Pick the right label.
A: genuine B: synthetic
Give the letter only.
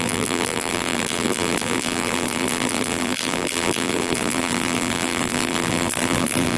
B